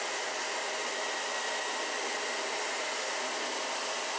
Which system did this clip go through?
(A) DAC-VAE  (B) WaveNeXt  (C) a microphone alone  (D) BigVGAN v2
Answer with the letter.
C